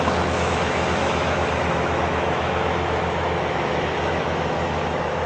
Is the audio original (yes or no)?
no